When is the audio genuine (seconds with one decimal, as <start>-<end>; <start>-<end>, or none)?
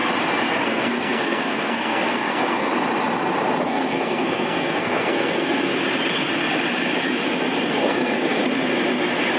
0.0-0.5; 2.7-3.6; 5.7-7.7; 8.4-9.4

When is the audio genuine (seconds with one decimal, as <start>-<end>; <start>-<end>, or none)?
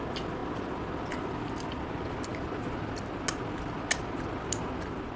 0.0-5.2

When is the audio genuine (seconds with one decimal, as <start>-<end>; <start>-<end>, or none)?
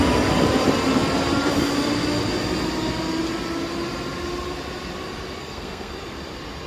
0.0-5.4; 5.9-6.7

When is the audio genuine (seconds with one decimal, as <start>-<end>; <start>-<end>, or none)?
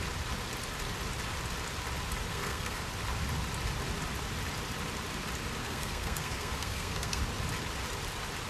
0.0-2.3; 2.8-5.6; 7.2-8.5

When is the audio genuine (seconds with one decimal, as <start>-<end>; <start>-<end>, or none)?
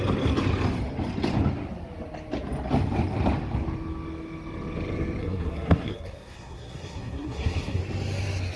0.0-5.2; 7.8-8.6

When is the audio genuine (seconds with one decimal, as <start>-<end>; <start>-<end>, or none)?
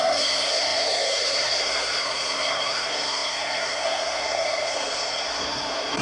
none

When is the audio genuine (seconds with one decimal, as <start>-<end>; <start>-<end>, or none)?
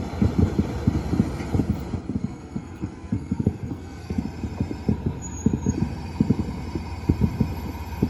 0.0-2.2; 4.2-8.1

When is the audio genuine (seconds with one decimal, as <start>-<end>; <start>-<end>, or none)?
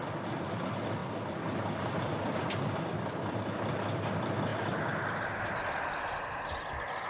0.0-7.1